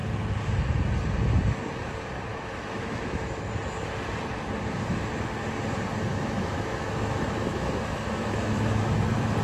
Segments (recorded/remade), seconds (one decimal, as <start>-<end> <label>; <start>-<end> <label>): 0.0-2.3 recorded; 2.3-3.4 remade; 3.4-6.1 recorded; 6.1-9.0 remade; 9.0-9.4 recorded